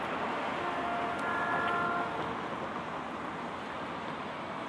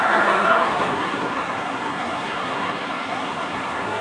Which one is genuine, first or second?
first